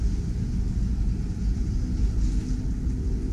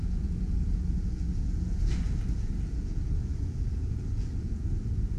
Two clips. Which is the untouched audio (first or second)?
first